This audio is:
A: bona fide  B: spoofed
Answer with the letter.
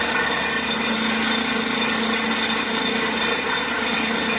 A